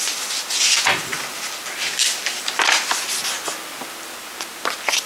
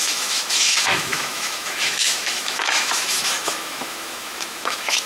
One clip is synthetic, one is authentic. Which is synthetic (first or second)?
second